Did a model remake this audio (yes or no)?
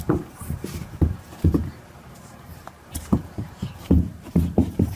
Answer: yes